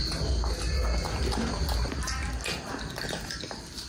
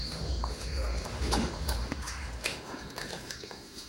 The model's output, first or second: second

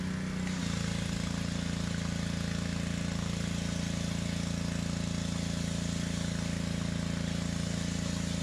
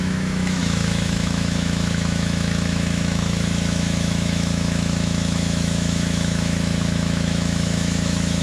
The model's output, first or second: second